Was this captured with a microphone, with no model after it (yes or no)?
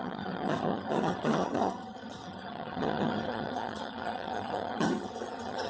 no